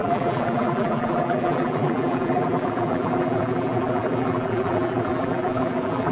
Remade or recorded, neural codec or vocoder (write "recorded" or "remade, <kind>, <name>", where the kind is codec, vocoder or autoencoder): remade, vocoder, BigVGAN v2